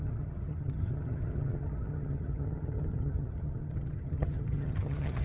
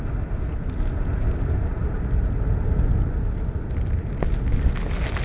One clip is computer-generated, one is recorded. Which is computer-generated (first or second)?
first